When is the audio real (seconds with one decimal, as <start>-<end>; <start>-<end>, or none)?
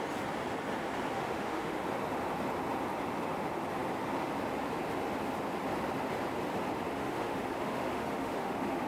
0.0-1.1; 1.8-6.9